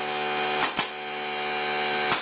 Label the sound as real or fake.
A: real